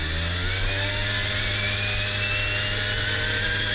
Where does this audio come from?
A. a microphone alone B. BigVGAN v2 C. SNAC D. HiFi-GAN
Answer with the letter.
A